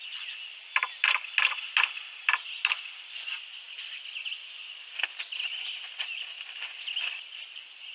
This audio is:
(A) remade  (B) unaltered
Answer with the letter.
B